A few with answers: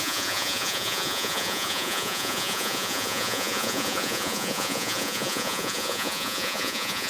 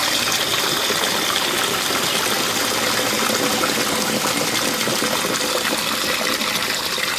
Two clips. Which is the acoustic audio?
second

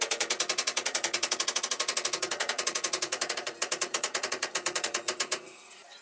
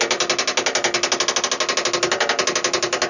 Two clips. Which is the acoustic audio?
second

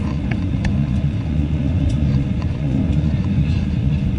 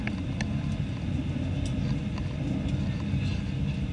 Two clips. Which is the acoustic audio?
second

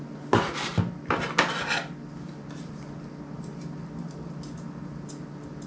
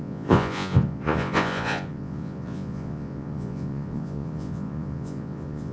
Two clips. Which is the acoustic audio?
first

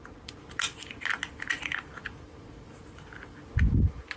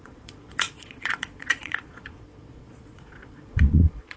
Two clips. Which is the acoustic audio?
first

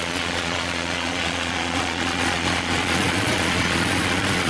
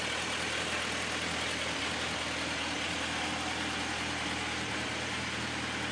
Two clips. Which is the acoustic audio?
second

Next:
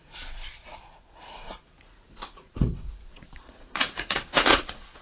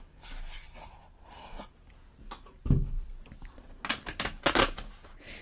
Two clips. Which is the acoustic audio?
second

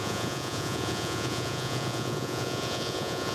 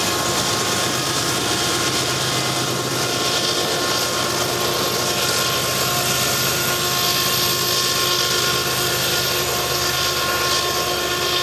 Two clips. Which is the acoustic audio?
second